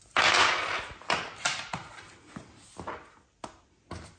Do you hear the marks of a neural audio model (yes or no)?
no